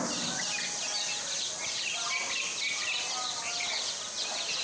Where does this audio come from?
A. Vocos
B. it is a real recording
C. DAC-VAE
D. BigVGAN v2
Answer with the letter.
B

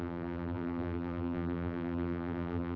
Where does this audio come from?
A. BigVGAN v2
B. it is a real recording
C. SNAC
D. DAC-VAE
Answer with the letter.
A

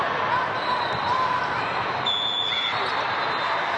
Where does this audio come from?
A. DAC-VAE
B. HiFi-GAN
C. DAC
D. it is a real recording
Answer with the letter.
D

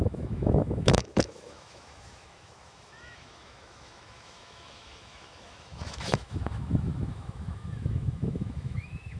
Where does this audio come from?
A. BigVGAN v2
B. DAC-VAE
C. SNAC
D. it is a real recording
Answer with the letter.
B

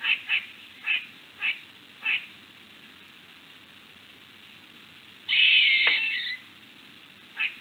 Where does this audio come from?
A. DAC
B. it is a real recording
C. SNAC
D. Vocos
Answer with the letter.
B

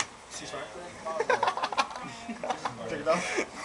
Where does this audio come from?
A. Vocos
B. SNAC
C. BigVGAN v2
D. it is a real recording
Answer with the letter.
D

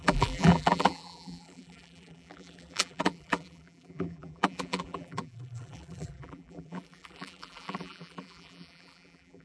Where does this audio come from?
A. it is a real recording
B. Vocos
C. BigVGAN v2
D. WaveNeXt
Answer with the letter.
C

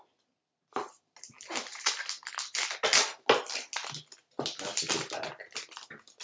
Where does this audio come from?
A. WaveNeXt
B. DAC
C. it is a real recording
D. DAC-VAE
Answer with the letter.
C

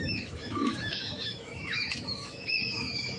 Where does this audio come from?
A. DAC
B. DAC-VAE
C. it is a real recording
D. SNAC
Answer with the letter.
B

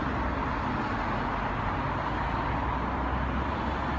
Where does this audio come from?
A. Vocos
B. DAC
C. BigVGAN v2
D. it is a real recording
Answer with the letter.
D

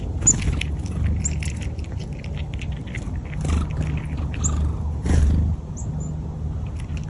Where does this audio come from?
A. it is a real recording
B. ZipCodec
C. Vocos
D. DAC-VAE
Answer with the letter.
A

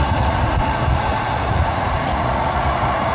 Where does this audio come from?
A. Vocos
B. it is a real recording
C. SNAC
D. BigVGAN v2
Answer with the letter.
A